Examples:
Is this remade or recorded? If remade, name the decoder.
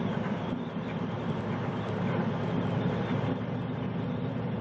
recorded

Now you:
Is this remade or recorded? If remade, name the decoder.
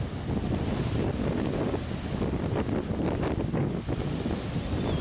recorded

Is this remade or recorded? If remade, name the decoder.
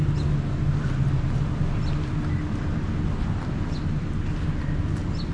recorded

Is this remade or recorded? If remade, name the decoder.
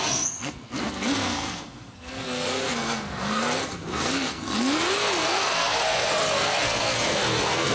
remade, codec, SNAC